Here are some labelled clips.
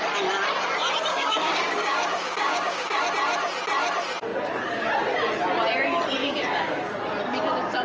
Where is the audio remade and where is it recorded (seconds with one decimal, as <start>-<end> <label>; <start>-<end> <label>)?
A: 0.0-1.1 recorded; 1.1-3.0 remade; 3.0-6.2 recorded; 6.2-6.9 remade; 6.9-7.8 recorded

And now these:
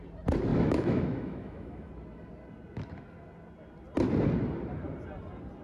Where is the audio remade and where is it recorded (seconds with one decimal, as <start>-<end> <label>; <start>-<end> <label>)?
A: 0.0-0.5 recorded; 0.5-1.9 remade; 1.9-5.6 recorded

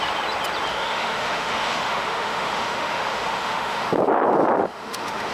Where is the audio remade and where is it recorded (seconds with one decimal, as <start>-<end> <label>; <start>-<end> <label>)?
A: 0.0-0.7 recorded; 0.7-3.9 remade; 3.9-4.6 recorded; 4.6-5.3 remade